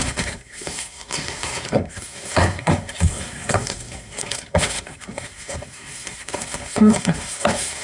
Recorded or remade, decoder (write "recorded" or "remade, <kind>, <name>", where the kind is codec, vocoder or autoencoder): remade, codec, SNAC